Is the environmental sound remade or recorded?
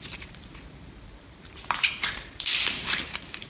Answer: remade